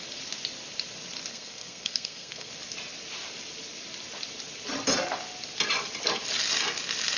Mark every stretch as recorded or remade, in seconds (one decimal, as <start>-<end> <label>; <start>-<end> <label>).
0.0-1.3 recorded; 1.3-2.5 remade; 2.5-7.2 recorded